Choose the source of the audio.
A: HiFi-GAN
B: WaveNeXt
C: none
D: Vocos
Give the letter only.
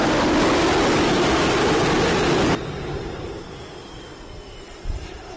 C